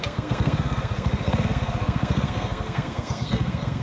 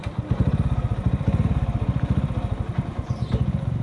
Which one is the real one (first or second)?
second